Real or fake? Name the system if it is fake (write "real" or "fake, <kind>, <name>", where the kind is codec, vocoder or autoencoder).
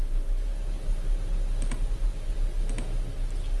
real